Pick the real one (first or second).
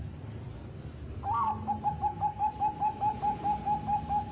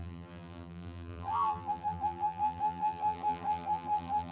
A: first